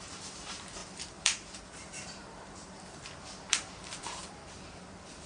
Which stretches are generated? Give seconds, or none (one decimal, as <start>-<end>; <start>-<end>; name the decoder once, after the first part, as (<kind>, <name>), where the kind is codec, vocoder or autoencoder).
0.0-5.3 (vocoder, BigVGAN v2)